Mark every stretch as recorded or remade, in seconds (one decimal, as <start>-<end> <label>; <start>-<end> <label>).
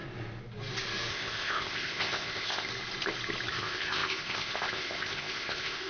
0.0-1.1 recorded; 1.1-2.7 remade; 2.7-3.5 recorded; 3.5-5.9 remade